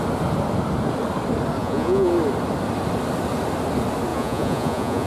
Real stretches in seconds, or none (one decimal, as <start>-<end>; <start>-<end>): 0.0-1.6; 2.1-4.1